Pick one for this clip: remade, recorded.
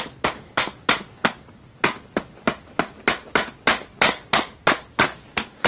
recorded